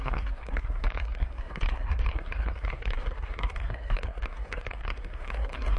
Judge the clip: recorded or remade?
remade